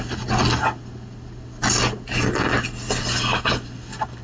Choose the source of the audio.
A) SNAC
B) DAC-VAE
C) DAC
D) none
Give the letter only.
D